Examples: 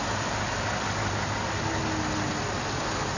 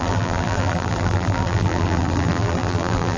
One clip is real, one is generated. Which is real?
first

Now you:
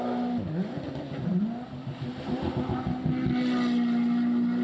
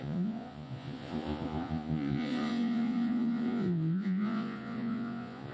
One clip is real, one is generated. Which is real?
first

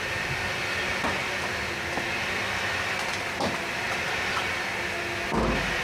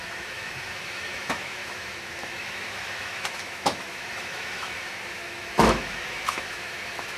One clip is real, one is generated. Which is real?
first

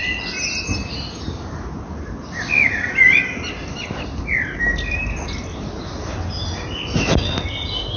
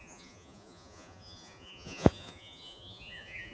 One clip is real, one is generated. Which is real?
first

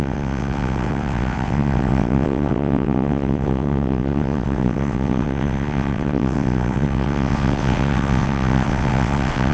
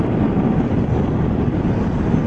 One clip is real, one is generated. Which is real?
second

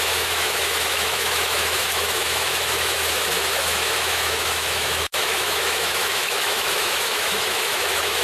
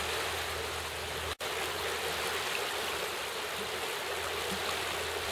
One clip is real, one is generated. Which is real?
second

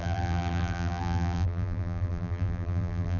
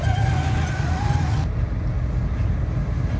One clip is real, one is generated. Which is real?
second